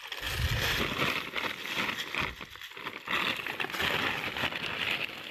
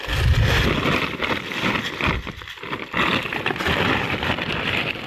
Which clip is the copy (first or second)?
second